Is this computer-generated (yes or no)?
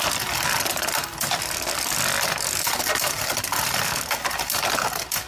no